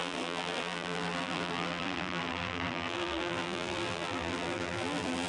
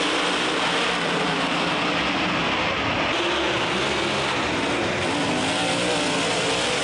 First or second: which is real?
second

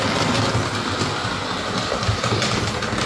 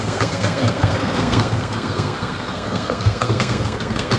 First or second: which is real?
first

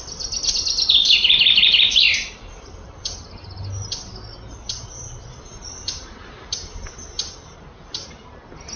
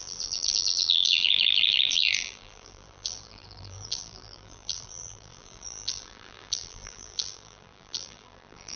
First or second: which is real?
first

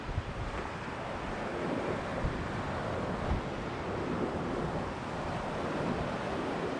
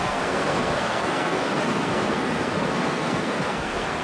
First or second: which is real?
first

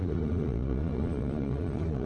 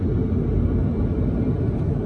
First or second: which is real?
second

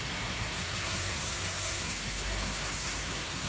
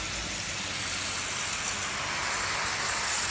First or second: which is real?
second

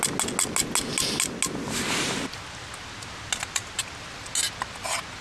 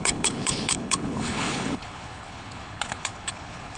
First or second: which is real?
first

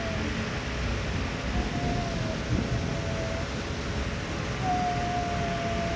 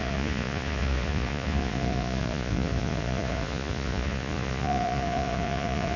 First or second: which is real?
first